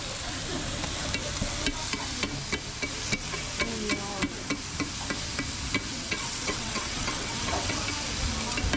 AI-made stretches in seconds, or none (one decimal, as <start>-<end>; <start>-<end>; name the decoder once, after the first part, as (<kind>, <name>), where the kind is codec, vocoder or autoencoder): 5.9-7.8 (vocoder, WaveNeXt)